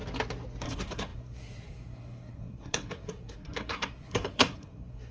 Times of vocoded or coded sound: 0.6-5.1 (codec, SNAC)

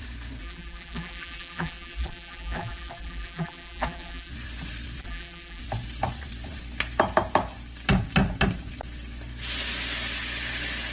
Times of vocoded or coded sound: 0.4-4.3 (vocoder, BigVGAN v2); 5.0-5.6